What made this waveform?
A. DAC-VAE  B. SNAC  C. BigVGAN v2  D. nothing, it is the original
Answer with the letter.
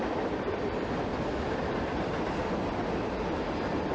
D